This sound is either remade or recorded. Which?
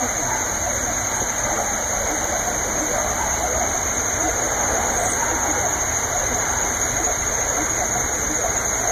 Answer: recorded